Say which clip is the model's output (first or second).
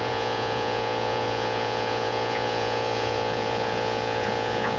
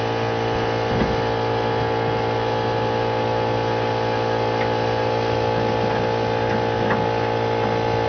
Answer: first